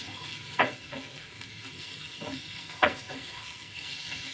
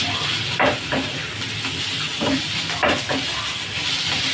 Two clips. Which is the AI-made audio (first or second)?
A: first